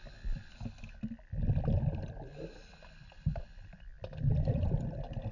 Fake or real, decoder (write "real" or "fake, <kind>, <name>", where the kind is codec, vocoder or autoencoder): real